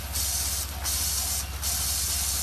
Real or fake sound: real